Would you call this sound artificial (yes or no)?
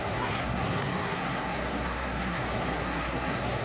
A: yes